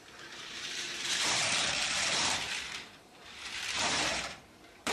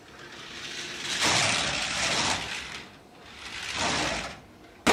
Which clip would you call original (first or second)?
second